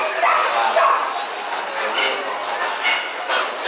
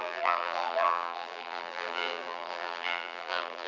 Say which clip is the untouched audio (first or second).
first